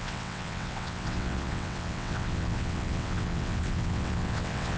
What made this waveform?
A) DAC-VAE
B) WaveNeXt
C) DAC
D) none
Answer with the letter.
B